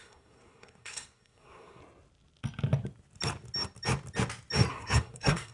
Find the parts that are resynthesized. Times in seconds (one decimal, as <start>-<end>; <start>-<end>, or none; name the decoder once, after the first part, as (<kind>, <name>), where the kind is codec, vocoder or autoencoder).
0.0-1.8 (codec, SNAC); 4.7-5.5